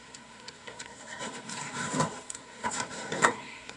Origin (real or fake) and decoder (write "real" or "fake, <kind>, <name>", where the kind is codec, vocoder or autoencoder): fake, codec, SNAC